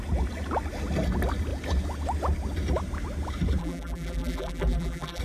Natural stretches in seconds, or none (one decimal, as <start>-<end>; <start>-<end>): 0.0-3.6